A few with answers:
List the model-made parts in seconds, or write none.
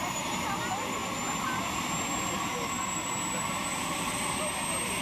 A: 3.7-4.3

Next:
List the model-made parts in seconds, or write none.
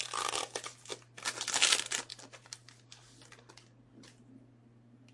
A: none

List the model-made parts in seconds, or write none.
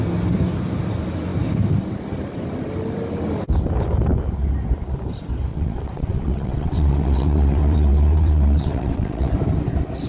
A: 5.5-9.3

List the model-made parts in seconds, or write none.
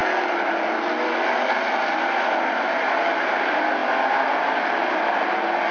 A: none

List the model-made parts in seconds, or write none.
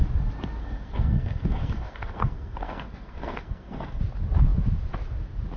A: 0.6-4.0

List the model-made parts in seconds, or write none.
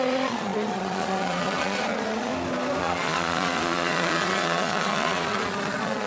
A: 0.0-2.3; 2.8-6.1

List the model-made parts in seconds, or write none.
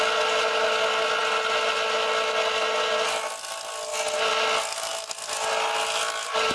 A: none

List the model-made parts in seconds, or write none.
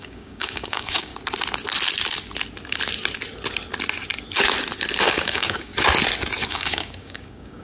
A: 0.0-1.1; 5.0-5.7; 6.5-7.6